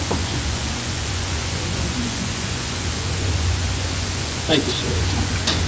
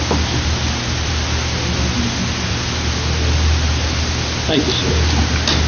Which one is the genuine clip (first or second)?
second